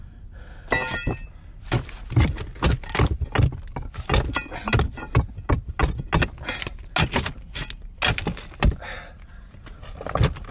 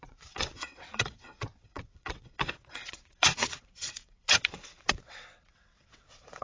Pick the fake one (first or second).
second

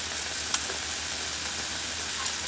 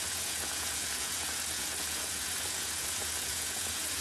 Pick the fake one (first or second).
second